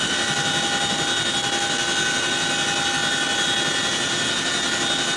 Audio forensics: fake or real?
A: real